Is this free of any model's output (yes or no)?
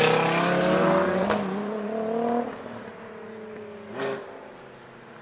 yes